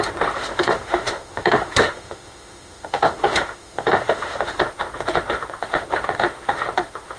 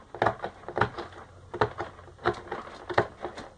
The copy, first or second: first